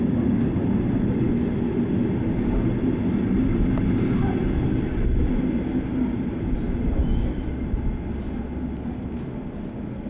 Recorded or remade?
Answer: recorded